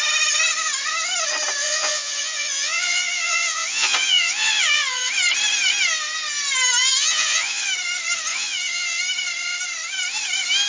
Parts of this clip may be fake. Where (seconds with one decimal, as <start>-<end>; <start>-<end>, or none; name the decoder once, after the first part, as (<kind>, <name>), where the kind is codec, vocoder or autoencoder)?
1.6-5.1 (vocoder, Vocos); 6.8-7.6; 8.3-9.0

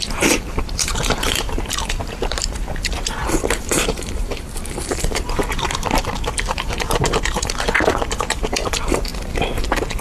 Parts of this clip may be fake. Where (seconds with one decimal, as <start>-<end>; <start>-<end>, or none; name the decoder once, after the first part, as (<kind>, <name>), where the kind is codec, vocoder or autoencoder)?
0.0-9.1 (vocoder, BigVGAN v2)

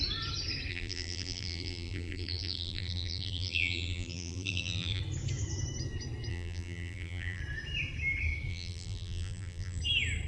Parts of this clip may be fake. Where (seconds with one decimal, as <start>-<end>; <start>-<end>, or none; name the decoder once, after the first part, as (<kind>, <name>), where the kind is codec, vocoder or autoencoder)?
0.7-5.0 (vocoder, BigVGAN v2); 6.3-7.4; 8.5-9.8

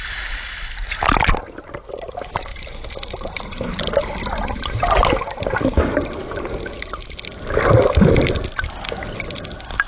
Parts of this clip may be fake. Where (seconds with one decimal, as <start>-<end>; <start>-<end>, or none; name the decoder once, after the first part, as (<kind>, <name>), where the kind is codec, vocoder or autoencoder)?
2.5-3.8 (vocoder, BigVGAN v2)

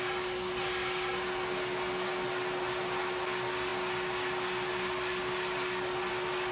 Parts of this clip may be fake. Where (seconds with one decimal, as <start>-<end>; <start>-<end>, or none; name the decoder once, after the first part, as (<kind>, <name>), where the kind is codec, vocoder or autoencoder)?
none

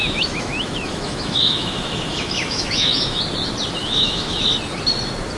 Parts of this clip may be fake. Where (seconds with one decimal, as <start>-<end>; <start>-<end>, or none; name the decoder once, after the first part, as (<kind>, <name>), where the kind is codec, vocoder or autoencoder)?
0.0-3.2 (autoencoder, DAC-VAE); 3.8-4.4

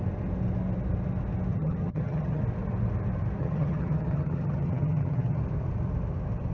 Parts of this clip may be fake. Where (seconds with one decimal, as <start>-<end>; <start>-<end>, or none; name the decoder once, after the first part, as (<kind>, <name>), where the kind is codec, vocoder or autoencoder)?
1.5-2.4 (vocoder, HiFi-GAN); 3.4-5.4

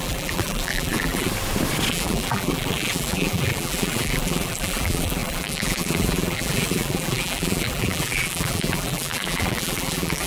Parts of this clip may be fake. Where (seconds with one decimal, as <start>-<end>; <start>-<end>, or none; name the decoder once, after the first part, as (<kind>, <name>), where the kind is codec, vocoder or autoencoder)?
0.0-1.3 (vocoder, BigVGAN v2); 1.9-10.3